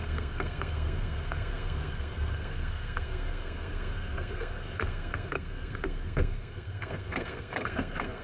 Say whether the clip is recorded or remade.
remade